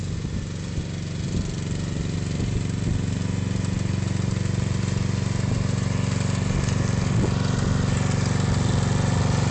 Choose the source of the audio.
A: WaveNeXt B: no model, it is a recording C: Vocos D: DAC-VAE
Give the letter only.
B